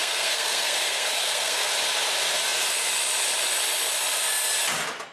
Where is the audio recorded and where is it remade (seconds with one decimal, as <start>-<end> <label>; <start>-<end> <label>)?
0.0-1.7 remade; 1.7-5.1 recorded